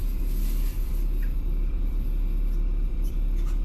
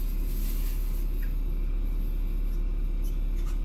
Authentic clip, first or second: second